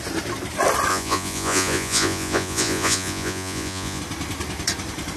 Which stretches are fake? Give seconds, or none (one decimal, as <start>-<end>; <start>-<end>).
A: 0.9-4.0